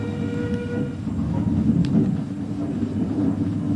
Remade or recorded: recorded